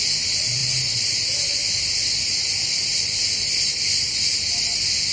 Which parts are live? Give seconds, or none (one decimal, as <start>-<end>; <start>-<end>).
0.0-5.1